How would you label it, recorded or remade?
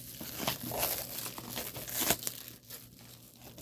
recorded